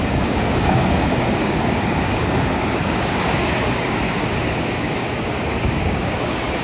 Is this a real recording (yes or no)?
no